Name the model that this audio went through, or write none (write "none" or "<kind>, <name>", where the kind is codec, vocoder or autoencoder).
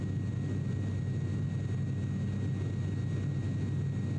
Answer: none